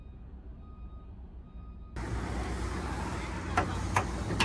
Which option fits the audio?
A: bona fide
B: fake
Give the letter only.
A